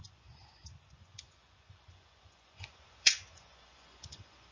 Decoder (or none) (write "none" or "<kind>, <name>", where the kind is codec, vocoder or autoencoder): vocoder, Vocos